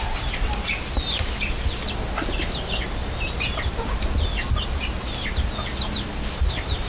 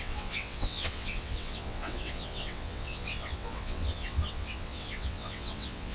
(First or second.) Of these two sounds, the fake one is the second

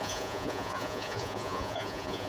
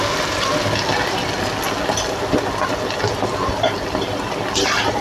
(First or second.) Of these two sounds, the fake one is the first